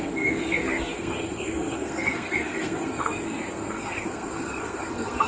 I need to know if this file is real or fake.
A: fake